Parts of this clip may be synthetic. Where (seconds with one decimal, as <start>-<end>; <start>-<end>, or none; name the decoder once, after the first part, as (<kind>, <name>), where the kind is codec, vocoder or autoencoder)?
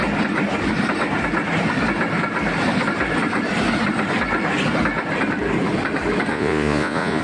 6.3-7.2 (vocoder, Vocos)